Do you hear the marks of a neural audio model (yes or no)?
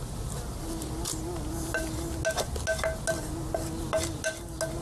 no